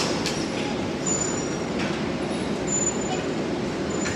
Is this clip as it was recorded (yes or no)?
yes